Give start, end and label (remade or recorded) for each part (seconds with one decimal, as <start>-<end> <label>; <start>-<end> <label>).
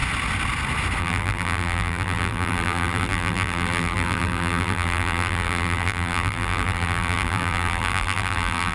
0.0-1.0 recorded; 1.0-8.7 remade